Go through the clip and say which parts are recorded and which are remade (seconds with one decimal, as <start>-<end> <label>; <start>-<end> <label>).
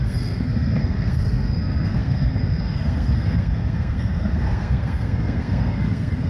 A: 0.0-6.3 remade